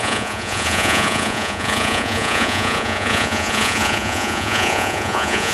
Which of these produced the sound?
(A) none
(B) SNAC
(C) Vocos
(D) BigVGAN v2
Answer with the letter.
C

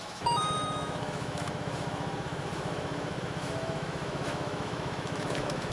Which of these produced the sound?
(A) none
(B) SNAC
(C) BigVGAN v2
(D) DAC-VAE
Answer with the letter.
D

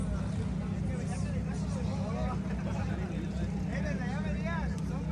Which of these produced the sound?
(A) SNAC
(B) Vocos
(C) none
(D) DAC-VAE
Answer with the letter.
C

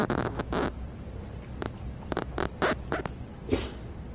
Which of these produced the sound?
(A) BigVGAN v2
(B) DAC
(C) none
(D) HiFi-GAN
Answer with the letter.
A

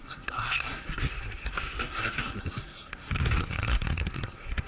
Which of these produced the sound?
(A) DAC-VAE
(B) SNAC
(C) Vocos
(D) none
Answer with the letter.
B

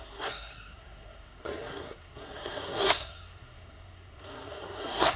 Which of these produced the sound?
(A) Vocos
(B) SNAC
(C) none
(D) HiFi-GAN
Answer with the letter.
B